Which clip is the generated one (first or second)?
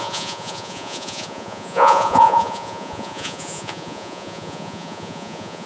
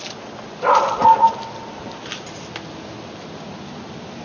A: first